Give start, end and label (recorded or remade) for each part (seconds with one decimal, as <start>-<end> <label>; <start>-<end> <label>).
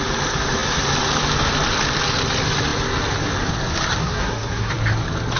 0.0-4.0 recorded; 4.0-4.7 remade; 4.7-5.4 recorded